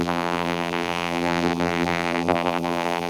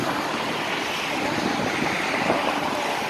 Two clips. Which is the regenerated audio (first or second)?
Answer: first